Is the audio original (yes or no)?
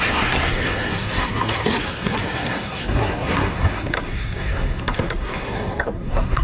no